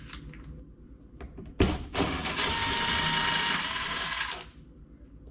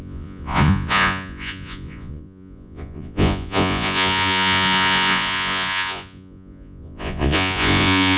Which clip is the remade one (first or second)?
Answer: second